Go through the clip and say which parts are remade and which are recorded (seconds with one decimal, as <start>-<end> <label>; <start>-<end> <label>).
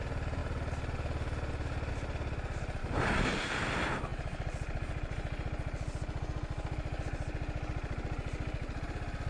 0.0-2.8 recorded; 2.8-3.5 remade; 3.5-9.3 recorded